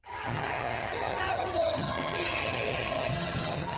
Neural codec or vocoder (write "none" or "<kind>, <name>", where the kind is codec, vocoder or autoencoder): vocoder, HiFi-GAN